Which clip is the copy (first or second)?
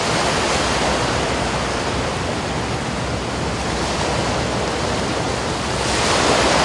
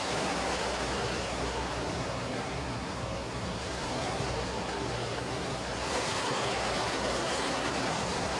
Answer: second